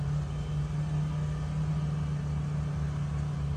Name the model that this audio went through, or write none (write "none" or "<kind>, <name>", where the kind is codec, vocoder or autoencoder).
none